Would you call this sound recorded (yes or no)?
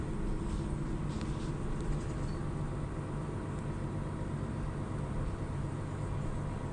yes